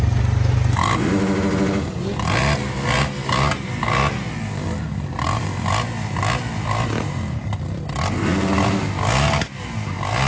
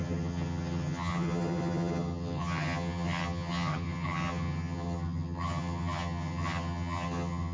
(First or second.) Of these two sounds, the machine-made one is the second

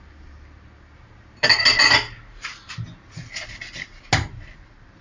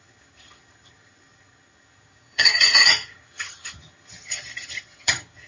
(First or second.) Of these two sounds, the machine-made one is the second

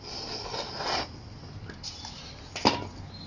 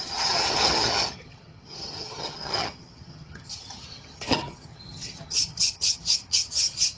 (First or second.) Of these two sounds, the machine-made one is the second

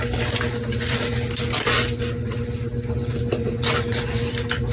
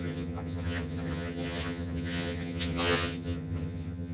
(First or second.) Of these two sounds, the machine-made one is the second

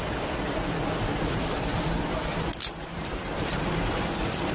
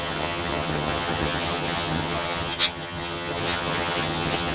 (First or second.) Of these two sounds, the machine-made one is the second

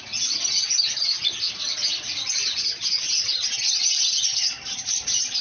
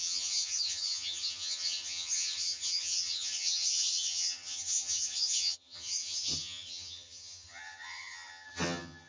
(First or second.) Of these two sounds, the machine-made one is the second